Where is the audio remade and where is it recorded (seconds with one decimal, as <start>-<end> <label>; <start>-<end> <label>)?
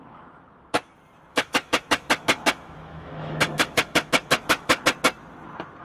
0.0-1.3 recorded; 1.3-4.8 remade; 4.8-5.8 recorded